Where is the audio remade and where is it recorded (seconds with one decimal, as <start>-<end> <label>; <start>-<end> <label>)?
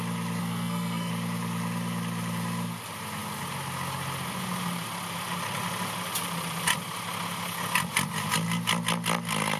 0.0-0.4 recorded; 0.4-1.1 remade; 1.1-9.6 recorded